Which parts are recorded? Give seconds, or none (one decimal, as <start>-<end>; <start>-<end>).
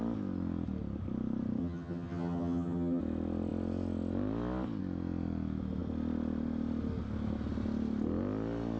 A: 0.0-1.6; 3.0-8.8